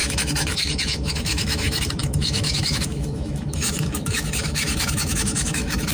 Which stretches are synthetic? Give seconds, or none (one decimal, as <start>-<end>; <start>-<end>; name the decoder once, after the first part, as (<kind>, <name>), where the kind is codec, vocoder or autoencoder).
0.0-5.9 (autoencoder, DAC-VAE)